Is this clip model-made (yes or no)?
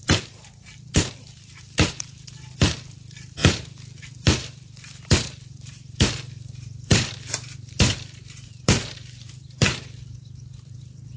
yes